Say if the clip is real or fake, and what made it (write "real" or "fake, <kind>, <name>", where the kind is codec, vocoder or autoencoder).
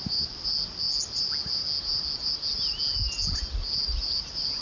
real